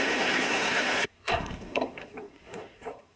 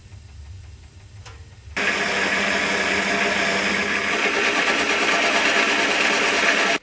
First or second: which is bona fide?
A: second